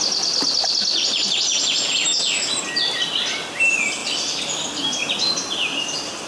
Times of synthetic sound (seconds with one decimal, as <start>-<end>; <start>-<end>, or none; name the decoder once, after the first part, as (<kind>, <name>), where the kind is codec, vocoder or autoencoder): none